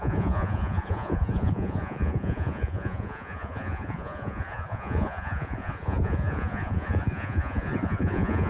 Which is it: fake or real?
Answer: fake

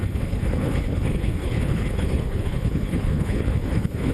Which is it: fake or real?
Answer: fake